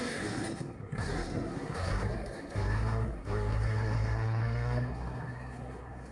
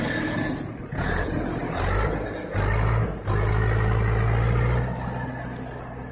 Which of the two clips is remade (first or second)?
first